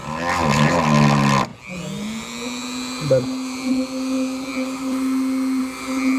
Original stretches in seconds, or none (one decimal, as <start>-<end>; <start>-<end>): 0.0-6.2